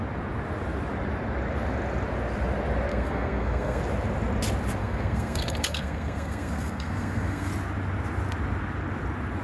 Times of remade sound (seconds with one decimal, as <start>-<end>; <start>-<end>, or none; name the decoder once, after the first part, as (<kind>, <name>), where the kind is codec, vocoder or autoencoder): 2.9-3.8 (codec, SNAC); 4.8-7.5